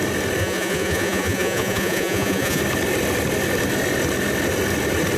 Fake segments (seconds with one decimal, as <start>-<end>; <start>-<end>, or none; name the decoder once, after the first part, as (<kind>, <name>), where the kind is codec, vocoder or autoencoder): 0.4-2.6 (vocoder, Vocos)